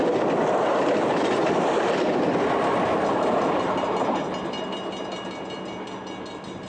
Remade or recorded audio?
recorded